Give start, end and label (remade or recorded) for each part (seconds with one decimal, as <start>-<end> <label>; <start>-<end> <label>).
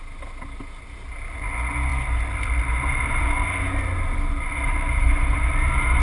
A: 0.0-4.9 recorded; 4.9-5.5 remade; 5.5-6.0 recorded